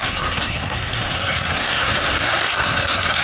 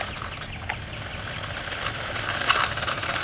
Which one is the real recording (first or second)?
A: second